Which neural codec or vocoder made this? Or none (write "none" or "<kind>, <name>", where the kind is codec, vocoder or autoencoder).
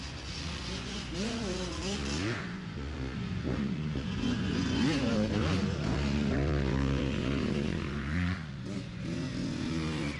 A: vocoder, Vocos